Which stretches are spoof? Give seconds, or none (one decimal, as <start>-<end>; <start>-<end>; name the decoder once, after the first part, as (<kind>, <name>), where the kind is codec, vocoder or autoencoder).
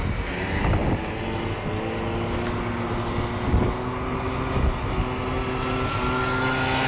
none